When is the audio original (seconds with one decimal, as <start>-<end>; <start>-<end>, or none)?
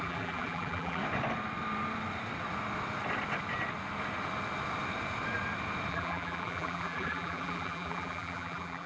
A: 1.0-5.9